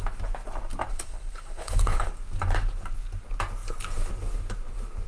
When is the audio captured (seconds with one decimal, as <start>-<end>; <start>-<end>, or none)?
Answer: 0.0-0.9; 2.1-5.1